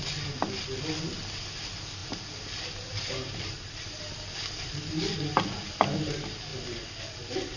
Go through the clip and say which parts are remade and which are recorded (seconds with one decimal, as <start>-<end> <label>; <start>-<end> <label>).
0.0-7.6 recorded